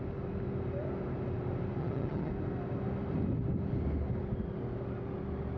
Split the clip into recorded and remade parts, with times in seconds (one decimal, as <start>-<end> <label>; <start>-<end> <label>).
0.0-1.8 recorded; 1.8-2.3 remade; 2.3-5.6 recorded